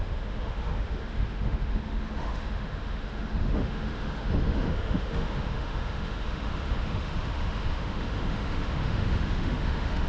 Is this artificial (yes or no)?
yes